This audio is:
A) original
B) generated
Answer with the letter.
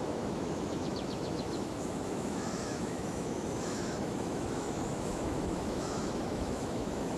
B